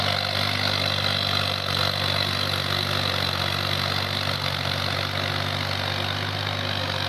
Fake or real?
real